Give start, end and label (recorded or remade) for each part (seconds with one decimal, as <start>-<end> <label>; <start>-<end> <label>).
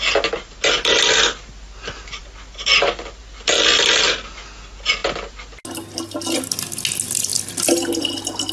0.0-8.5 recorded